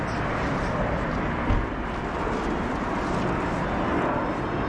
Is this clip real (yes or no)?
yes